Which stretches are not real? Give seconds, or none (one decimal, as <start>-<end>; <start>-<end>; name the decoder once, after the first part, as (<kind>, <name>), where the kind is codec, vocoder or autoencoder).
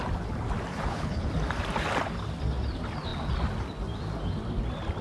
0.7-1.3 (codec, HILCodec)